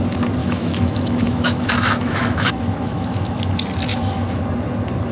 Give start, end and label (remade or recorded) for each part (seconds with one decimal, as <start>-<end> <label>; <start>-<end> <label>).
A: 0.0-0.4 recorded; 0.4-3.4 remade; 3.4-3.9 recorded; 3.9-4.4 remade; 4.4-5.1 recorded